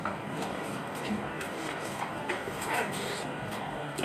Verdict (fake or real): fake